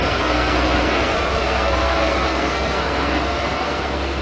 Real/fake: fake